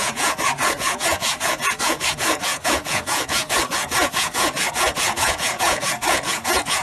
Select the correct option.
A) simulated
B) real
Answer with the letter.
A